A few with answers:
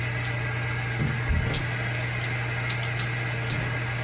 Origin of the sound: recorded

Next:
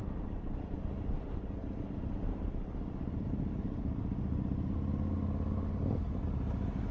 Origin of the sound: recorded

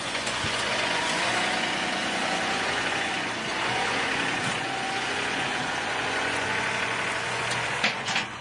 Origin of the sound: remade